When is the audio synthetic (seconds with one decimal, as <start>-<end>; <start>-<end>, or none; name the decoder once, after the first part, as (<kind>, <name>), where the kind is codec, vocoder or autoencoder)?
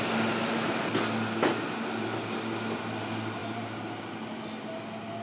3.4-4.0 (vocoder, BigVGAN v2)